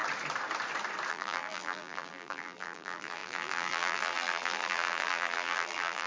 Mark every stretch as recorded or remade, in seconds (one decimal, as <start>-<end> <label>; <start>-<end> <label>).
0.0-1.1 recorded; 1.1-6.1 remade